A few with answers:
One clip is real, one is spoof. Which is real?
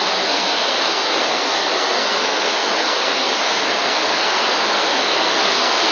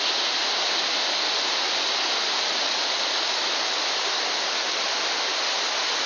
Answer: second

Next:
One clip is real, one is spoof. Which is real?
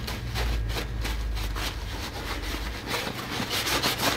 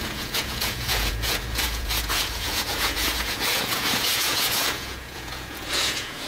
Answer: first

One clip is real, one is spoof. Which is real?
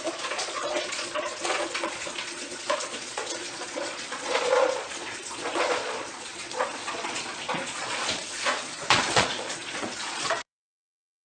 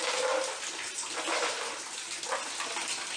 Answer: second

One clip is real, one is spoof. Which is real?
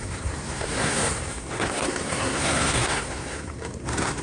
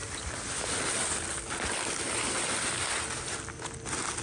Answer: second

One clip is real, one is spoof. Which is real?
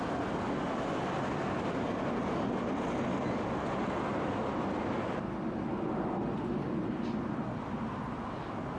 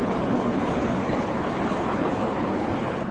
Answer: first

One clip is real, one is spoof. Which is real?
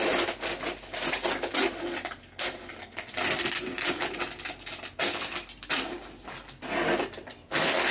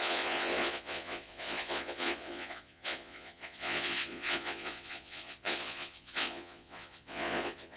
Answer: first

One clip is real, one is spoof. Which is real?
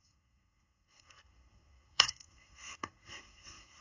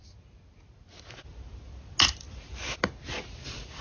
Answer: second